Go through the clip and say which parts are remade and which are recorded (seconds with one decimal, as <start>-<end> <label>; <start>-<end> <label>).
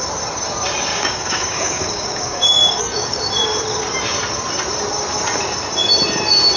0.0-0.9 recorded; 0.9-3.2 remade; 3.2-6.6 recorded